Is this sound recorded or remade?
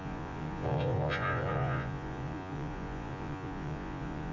remade